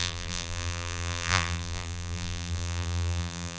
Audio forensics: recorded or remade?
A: remade